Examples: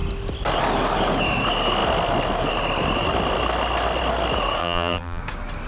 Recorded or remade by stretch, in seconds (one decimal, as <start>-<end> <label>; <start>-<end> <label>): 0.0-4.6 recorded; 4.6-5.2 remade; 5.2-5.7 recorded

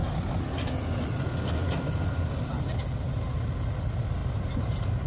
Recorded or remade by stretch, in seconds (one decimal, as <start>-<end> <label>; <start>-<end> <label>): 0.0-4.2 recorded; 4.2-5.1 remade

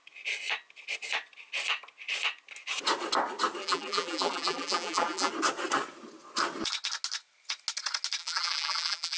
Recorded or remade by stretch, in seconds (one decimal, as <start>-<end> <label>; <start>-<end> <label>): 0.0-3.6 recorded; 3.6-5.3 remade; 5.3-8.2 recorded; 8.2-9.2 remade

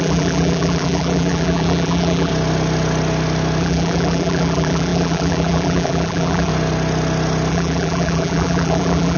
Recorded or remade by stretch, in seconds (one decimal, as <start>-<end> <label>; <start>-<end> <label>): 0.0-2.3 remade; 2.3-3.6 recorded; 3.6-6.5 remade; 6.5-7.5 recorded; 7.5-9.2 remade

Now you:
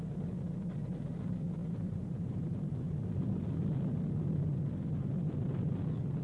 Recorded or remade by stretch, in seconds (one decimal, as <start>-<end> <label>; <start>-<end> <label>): 0.0-1.6 recorded; 1.6-3.1 remade; 3.1-6.2 recorded

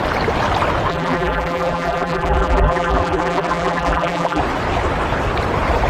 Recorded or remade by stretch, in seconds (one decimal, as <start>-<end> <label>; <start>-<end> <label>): 0.0-0.9 recorded; 0.9-4.4 remade; 4.4-5.9 recorded

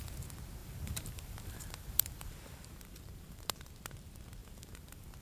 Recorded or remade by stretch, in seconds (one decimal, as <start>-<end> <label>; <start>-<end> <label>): 0.0-0.6 recorded; 0.6-3.7 remade; 3.7-4.4 recorded; 4.4-5.2 remade

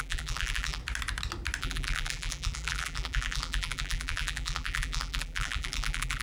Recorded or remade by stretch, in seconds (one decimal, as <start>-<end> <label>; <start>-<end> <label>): 0.0-0.8 remade; 0.8-1.6 recorded; 1.6-6.2 remade